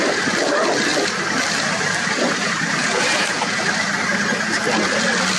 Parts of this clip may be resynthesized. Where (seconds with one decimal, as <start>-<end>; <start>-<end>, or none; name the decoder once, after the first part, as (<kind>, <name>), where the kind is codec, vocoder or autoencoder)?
2.8-3.6 (vocoder, Vocos)